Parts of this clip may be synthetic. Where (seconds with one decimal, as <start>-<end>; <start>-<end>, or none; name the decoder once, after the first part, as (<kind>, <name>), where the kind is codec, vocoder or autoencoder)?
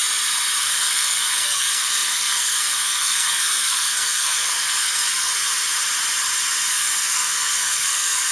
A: 0.6-5.3 (codec, SNAC); 6.7-8.3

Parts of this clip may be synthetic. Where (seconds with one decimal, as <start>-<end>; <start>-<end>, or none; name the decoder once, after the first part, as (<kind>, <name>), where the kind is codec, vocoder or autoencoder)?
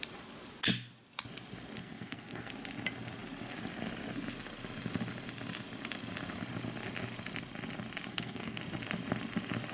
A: 1.8-2.5 (codec, SNAC); 8.1-8.6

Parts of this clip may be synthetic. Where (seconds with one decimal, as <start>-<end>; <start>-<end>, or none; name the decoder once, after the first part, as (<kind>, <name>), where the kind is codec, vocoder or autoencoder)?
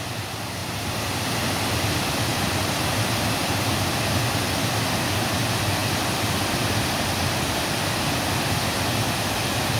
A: 0.6-1.4 (vocoder, BigVGAN v2); 2.3-3.6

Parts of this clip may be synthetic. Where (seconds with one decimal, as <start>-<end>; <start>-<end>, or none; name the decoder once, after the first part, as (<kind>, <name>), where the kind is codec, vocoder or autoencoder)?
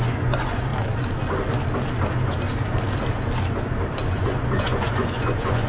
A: 0.0-0.7 (vocoder, Vocos); 4.0-5.7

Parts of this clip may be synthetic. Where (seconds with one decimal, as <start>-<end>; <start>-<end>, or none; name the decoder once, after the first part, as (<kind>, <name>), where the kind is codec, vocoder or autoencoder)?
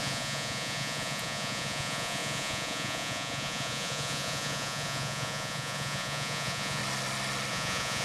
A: 0.0-6.8 (vocoder, Vocos); 7.5-8.0